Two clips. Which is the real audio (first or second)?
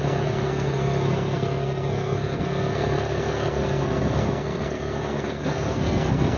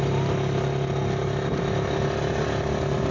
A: second